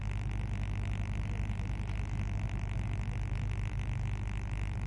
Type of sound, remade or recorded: recorded